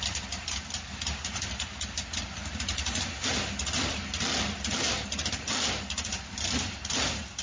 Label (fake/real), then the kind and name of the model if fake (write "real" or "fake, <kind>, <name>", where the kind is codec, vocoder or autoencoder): real